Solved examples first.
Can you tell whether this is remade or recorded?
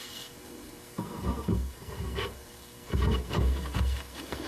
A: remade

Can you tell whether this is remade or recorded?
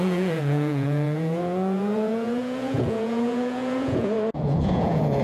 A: remade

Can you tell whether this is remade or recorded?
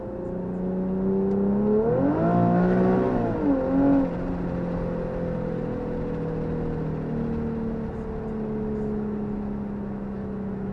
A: recorded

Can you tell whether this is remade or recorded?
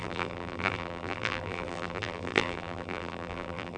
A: remade